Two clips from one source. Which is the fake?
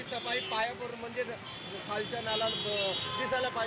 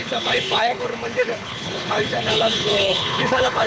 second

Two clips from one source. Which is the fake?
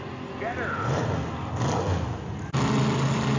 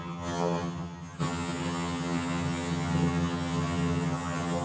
second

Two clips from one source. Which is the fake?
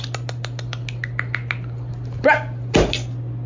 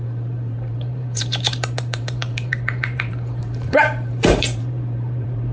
second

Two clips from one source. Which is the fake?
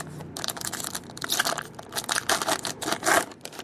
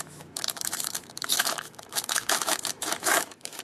second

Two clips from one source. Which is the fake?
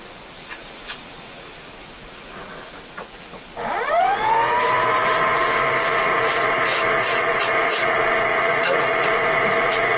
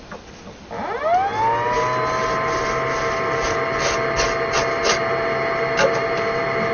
first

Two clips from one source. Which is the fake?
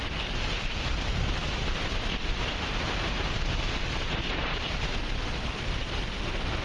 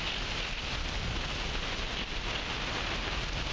first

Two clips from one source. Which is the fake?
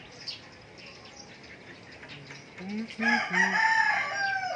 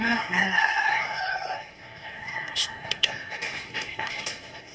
second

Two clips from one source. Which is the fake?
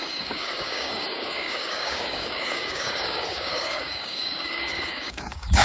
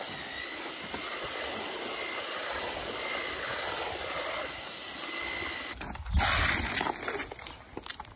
first